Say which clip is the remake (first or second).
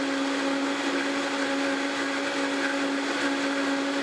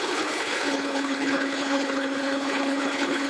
second